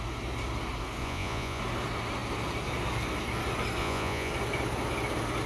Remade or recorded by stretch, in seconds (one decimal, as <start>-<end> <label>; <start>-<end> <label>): 0.0-1.0 recorded; 1.0-1.6 remade; 1.6-3.8 recorded; 3.8-4.3 remade; 4.3-5.5 recorded